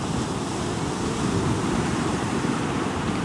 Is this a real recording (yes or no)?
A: yes